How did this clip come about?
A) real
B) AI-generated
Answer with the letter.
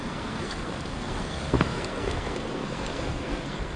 B